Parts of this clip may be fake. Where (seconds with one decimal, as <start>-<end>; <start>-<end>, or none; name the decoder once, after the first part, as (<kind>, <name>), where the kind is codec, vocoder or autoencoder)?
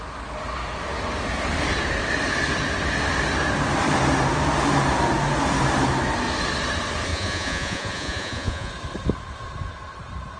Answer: 7.1-8.7 (vocoder, Vocos)